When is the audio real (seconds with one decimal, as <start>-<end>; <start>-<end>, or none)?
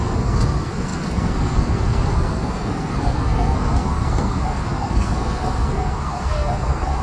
none